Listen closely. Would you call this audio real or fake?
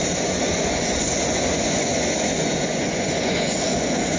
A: fake